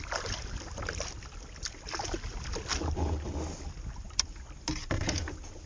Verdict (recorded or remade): recorded